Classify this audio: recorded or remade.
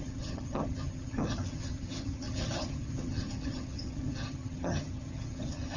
remade